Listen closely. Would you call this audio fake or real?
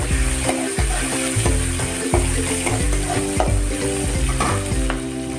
real